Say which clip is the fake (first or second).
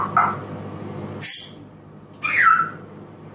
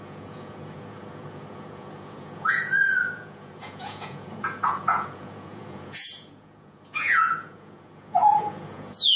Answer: second